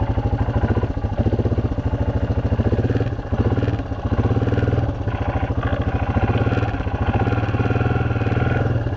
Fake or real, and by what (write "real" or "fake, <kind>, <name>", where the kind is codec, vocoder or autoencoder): real